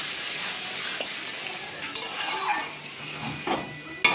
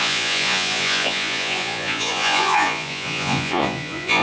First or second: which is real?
first